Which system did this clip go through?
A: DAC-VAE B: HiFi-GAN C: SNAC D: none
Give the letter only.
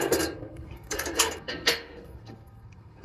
C